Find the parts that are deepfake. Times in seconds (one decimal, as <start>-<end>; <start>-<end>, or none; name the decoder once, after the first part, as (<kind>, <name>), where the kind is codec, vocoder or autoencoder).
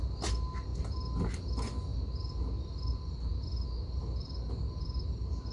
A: none